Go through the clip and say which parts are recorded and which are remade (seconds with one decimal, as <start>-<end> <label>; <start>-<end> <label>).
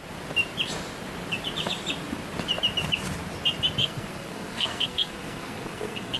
0.0-3.8 recorded; 3.8-6.2 remade